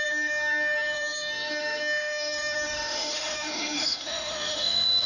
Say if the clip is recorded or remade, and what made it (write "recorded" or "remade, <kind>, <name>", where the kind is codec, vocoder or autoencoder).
remade, autoencoder, DAC-VAE